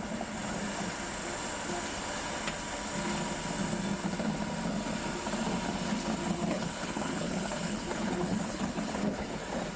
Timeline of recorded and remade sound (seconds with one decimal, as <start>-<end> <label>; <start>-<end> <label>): 0.0-6.3 recorded; 6.3-9.4 remade; 9.4-9.8 recorded